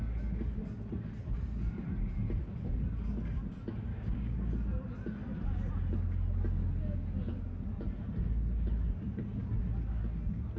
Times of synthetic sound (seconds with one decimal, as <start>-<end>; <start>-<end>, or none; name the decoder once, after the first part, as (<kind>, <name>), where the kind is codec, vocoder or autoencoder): 3.9-4.5 (codec, DAC)